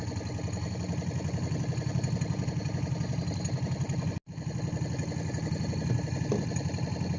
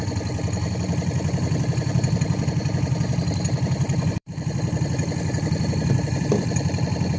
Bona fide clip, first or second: first